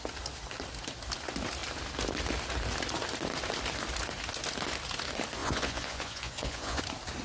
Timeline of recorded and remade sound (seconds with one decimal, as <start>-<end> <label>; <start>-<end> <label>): 0.0-5.4 recorded; 5.4-6.8 remade; 6.8-7.2 recorded